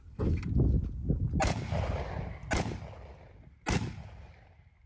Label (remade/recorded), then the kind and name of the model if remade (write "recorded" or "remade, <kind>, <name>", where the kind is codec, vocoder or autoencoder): recorded